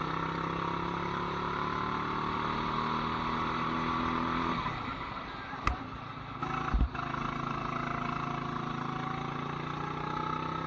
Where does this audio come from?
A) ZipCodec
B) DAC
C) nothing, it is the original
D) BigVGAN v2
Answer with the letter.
C